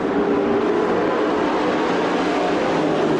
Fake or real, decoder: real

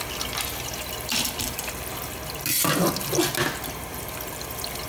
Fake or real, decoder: real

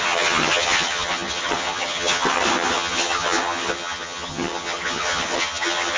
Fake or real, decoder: fake, vocoder, HiFi-GAN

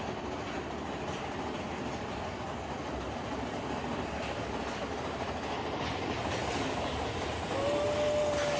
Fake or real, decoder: real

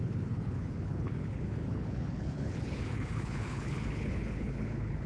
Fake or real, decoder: fake, codec, HILCodec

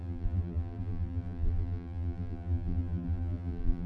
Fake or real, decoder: fake, vocoder, BigVGAN v2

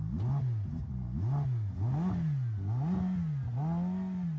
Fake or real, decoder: real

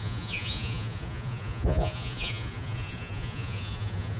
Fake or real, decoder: fake, vocoder, Vocos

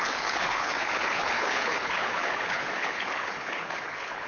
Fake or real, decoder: fake, codec, HILCodec